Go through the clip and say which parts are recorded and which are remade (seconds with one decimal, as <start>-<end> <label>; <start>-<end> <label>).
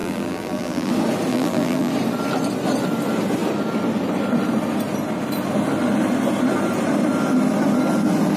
0.0-0.9 remade; 0.9-1.3 recorded; 1.3-1.9 remade; 1.9-8.4 recorded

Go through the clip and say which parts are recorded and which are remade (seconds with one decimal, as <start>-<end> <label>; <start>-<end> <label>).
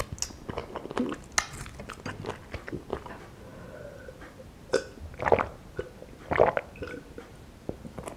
0.0-8.2 recorded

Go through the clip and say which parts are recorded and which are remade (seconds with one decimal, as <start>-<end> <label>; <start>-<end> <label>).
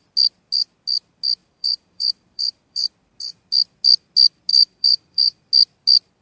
0.0-1.4 recorded; 1.4-2.9 remade; 2.9-4.5 recorded; 4.5-5.5 remade; 5.5-6.2 recorded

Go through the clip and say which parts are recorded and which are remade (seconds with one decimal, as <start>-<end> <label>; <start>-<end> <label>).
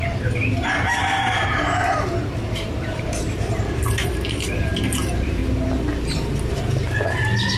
0.0-5.4 remade; 5.4-6.5 recorded; 6.5-7.6 remade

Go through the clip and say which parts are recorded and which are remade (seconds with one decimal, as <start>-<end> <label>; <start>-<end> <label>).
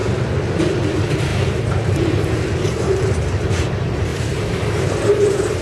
0.0-0.7 recorded; 0.7-5.6 remade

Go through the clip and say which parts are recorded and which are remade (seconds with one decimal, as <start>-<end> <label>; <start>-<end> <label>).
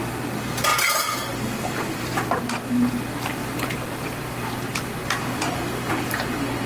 0.0-0.7 recorded; 0.7-2.4 remade; 2.4-3.4 recorded; 3.4-5.9 remade; 5.9-6.7 recorded